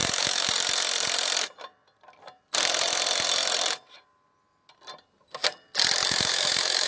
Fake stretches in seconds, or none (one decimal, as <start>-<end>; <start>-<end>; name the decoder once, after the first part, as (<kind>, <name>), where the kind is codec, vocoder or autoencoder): 0.0-0.5 (autoencoder, DAC-VAE); 6.0-6.9